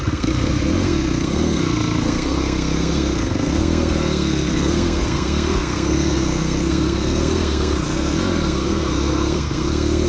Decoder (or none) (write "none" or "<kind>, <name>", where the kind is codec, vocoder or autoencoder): codec, SNAC